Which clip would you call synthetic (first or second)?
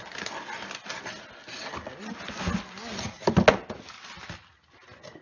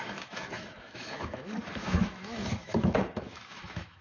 second